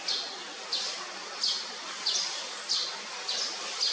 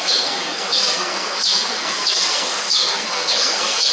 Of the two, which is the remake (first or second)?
second